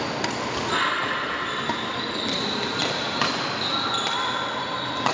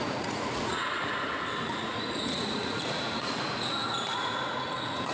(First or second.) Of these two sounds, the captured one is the first